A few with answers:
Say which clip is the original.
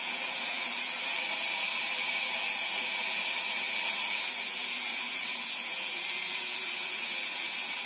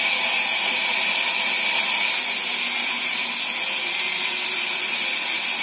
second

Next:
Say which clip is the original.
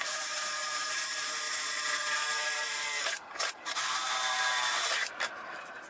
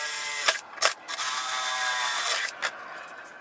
second